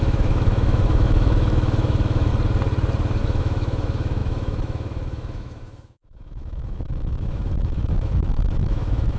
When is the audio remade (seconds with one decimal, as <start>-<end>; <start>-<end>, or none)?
0.0-2.3; 3.2-9.2